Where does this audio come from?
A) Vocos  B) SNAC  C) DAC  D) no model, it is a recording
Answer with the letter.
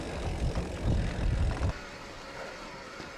D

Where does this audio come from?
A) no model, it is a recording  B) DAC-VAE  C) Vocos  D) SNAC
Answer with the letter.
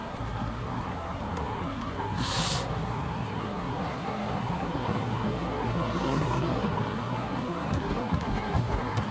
D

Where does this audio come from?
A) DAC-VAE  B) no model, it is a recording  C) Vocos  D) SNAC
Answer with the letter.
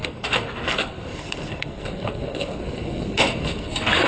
D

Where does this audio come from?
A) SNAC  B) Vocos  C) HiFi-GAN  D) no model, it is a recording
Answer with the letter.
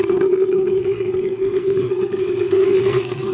A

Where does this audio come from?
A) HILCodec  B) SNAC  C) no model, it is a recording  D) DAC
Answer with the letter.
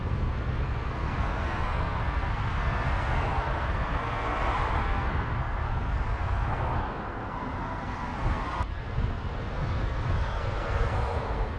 B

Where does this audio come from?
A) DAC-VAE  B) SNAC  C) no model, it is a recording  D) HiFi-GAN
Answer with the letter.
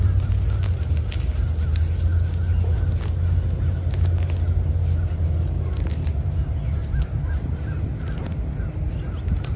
C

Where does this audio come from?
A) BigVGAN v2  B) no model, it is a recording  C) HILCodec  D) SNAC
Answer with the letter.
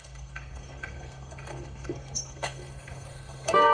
D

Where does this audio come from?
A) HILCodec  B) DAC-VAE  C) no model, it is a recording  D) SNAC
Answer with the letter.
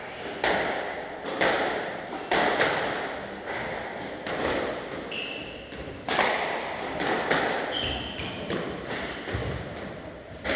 C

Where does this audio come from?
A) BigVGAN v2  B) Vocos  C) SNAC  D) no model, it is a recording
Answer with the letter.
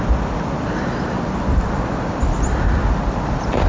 D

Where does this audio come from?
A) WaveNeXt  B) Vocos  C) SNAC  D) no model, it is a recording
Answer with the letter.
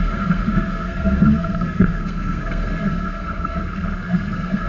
C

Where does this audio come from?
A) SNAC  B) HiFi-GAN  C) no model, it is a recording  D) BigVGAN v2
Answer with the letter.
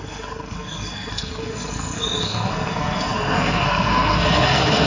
A